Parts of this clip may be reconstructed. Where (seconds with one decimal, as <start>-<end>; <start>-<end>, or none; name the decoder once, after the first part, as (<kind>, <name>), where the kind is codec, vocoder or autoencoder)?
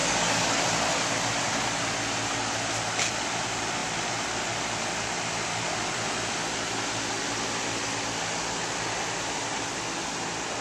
0.0-0.6 (codec, DAC)